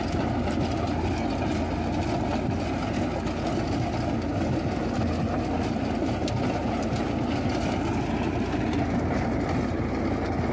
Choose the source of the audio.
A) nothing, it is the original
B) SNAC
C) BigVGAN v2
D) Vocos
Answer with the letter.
A